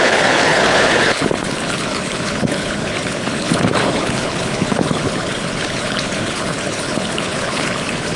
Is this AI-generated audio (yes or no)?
yes